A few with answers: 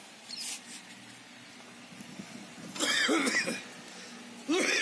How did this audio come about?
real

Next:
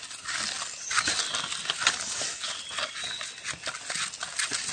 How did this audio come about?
real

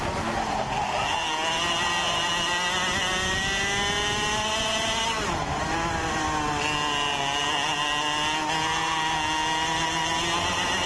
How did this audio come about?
real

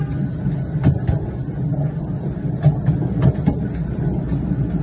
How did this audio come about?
real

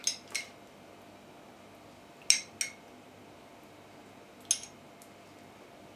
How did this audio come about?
real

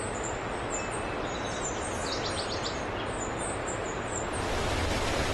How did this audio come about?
real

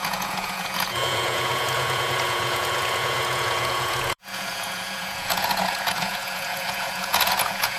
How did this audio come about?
fake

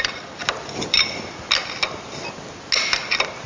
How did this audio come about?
real